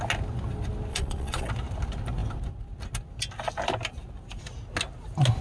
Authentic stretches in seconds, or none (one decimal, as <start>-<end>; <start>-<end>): 0.0-0.9; 1.5-5.4

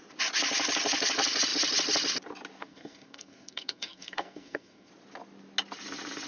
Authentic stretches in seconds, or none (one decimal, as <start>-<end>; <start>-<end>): 0.0-2.6; 4.9-6.3